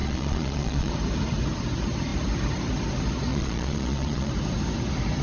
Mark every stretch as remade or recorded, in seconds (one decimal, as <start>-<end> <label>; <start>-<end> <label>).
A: 0.0-0.9 remade; 0.9-3.3 recorded; 3.3-4.3 remade; 4.3-5.2 recorded